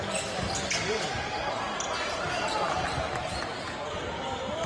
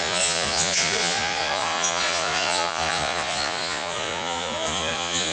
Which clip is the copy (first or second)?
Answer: second